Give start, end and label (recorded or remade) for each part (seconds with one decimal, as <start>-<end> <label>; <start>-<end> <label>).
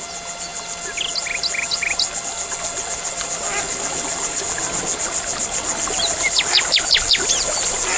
0.0-8.0 recorded